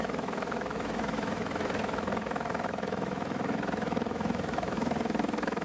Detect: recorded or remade remade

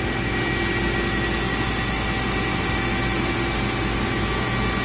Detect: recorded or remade recorded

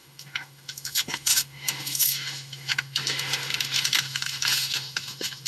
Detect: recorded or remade remade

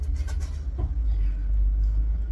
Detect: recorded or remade recorded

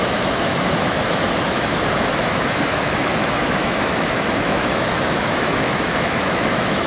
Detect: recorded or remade remade